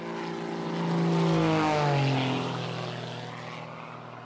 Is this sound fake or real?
real